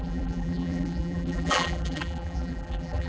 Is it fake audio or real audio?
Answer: fake